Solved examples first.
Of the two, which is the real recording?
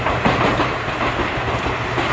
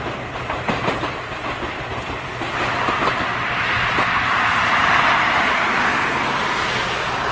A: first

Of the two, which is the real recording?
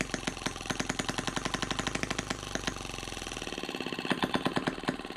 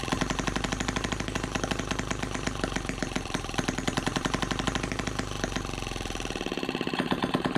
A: first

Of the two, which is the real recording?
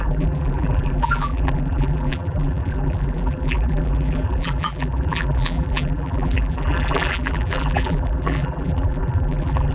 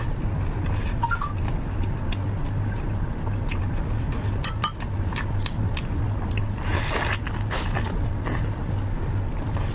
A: second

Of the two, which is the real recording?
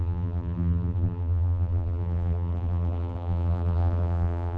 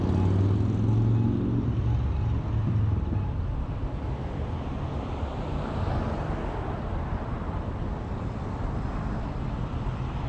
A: second